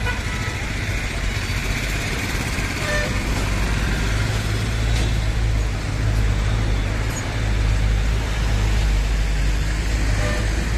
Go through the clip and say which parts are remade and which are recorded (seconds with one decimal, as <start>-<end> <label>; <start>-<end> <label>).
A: 0.0-1.6 recorded; 1.6-4.3 remade; 4.3-10.8 recorded